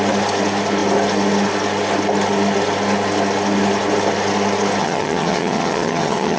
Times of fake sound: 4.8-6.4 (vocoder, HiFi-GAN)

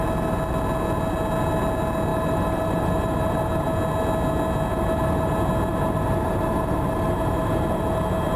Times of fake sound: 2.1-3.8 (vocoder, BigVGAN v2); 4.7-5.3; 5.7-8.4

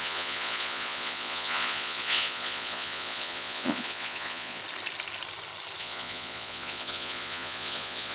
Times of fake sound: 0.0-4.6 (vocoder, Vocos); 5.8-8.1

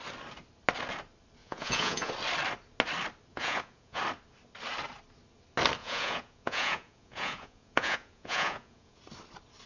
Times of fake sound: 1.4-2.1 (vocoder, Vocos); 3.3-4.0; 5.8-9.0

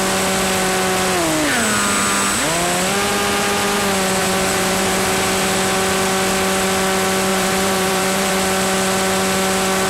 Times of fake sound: 4.2-5.1 (vocoder, BigVGAN v2); 7.3-8.3

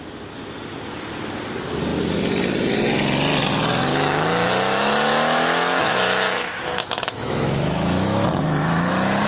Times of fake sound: 3.9-8.9 (autoencoder, DAC-VAE)

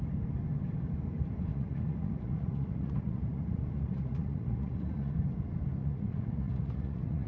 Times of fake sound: 1.5-5.1 (vocoder, Vocos); 5.8-7.3